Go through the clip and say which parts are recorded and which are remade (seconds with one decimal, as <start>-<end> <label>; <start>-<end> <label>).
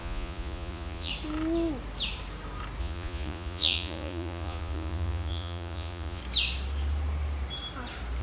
0.0-1.1 remade; 1.1-2.8 recorded; 2.8-6.2 remade; 6.2-8.2 recorded